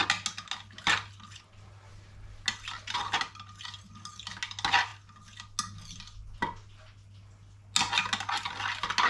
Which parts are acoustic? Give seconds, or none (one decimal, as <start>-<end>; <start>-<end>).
0.0-9.1